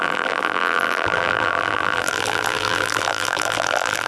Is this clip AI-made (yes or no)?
yes